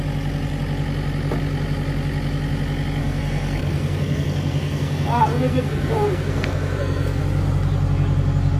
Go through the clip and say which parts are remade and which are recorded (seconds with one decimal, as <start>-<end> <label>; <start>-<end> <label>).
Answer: 0.0-3.0 recorded; 3.0-7.2 remade; 7.2-8.6 recorded